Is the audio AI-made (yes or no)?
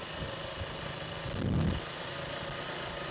no